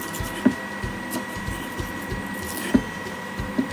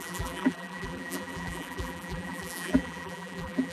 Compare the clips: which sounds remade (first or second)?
second